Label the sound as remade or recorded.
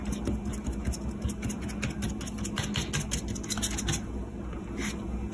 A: recorded